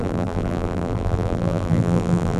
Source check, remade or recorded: remade